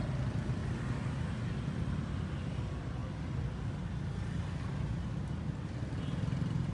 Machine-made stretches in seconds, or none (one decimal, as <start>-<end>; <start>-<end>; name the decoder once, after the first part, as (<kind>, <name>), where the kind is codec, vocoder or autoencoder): none